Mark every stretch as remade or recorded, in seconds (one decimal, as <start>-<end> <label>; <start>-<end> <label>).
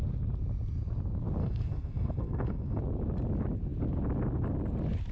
0.0-1.4 recorded; 1.4-2.8 remade; 2.8-5.1 recorded